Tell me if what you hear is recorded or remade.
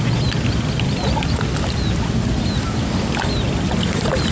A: recorded